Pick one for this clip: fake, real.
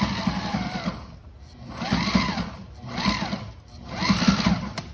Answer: real